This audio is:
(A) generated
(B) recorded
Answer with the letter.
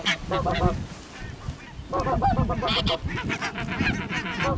B